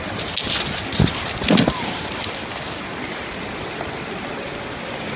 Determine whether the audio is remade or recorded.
recorded